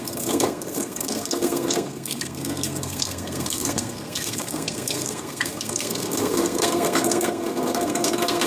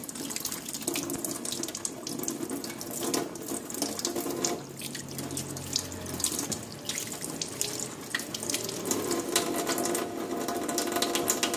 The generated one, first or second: first